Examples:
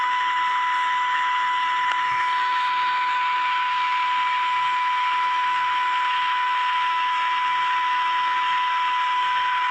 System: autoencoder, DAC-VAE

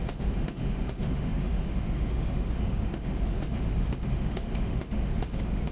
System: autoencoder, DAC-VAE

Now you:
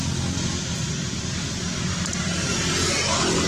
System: none